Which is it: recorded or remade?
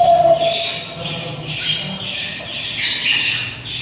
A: recorded